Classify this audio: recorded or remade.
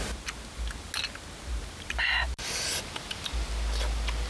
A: recorded